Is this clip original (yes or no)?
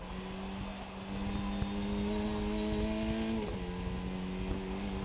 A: yes